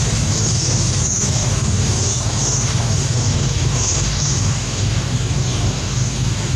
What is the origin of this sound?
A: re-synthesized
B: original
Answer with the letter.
A